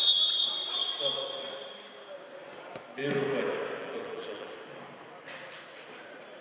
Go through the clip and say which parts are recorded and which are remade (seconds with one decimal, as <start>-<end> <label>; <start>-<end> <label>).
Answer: 0.0-3.8 recorded; 3.8-4.5 remade; 4.5-6.4 recorded